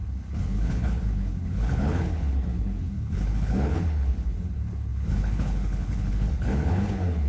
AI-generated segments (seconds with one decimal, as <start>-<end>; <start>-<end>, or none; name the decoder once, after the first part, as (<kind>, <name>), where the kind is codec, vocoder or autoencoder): 0.0-7.3 (codec, HILCodec)